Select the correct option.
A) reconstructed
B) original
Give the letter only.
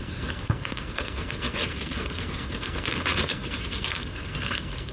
A